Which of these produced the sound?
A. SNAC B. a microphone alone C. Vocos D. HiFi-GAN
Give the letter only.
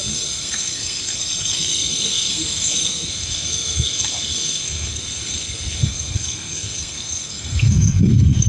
A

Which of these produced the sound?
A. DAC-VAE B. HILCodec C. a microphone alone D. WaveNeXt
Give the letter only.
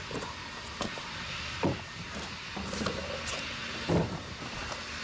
C